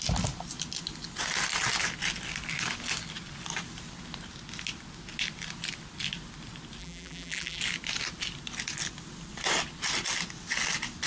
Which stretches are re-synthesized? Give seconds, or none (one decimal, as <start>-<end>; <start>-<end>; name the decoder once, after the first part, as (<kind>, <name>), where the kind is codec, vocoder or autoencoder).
6.8-7.6 (vocoder, BigVGAN v2)